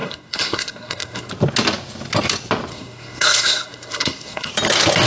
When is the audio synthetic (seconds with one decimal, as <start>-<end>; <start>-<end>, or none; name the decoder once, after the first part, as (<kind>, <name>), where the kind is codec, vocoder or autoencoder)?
0.0-1.3 (codec, SNAC); 2.7-4.5